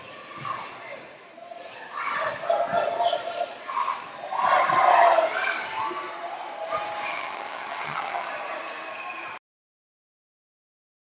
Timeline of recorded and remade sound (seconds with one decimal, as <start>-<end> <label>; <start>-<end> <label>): 0.0-7.1 recorded; 7.1-8.3 remade; 8.3-11.1 recorded